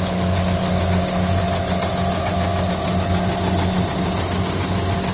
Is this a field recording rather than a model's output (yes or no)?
yes